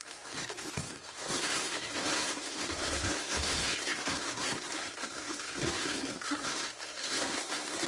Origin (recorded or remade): remade